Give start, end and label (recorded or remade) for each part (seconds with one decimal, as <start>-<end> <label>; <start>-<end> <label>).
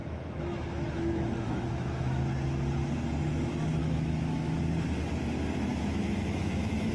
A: 0.0-2.2 remade; 2.2-3.8 recorded; 3.8-4.6 remade; 4.6-5.7 recorded; 5.7-6.9 remade